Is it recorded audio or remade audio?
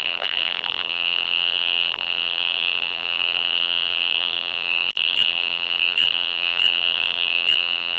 remade